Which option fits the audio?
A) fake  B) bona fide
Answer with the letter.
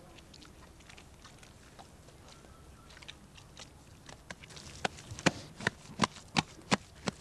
B